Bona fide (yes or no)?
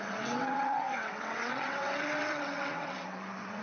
no